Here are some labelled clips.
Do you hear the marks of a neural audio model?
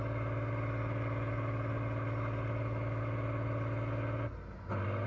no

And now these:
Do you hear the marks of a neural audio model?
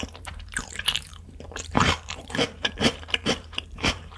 yes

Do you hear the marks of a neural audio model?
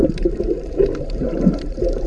yes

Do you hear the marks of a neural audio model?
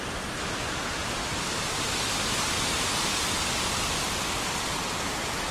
no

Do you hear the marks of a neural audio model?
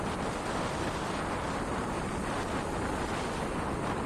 yes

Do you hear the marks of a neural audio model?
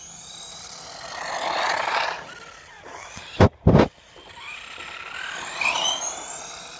no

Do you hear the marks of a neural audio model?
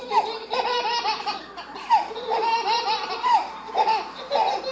yes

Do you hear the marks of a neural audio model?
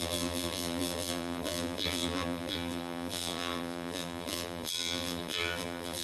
yes